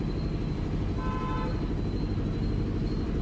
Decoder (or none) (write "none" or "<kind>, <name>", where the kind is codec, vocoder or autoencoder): none